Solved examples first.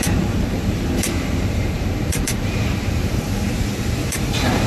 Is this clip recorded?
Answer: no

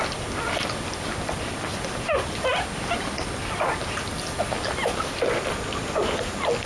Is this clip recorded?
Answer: yes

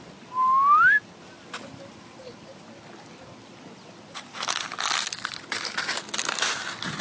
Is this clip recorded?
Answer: yes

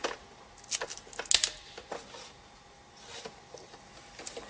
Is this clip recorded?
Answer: yes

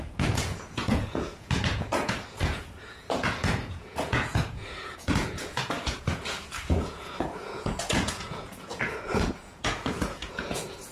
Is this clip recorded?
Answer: no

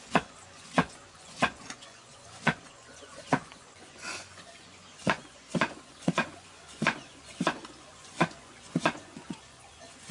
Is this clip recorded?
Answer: no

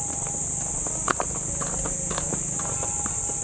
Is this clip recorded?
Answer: yes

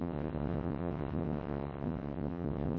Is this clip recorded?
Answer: no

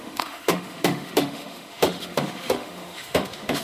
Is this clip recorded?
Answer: no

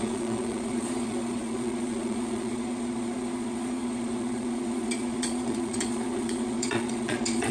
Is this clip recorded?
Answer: no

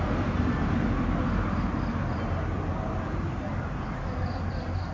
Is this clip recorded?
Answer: yes